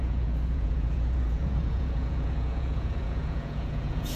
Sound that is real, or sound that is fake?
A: fake